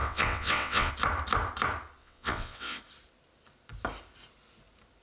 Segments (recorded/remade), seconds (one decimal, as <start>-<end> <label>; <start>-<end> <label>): 0.0-0.9 remade; 0.9-2.0 recorded; 2.0-2.8 remade; 2.8-5.0 recorded